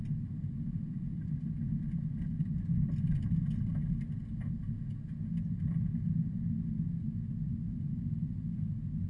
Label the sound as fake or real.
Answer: real